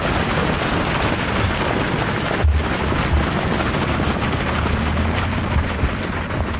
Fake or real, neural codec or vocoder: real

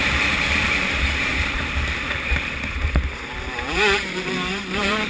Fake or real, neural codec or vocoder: fake, vocoder, BigVGAN v2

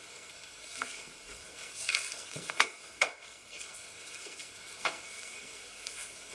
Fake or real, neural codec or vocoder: fake, codec, SNAC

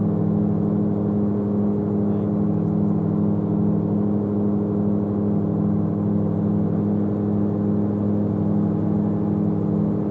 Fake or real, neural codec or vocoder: real